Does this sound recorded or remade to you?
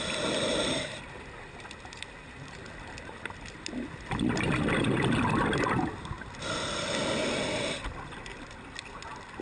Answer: recorded